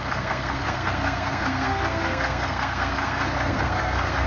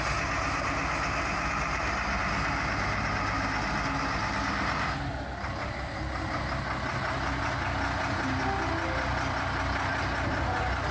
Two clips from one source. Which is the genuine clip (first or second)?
second